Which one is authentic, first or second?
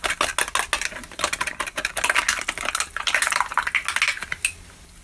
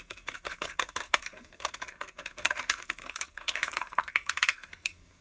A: first